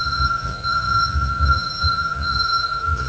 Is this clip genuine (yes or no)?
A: no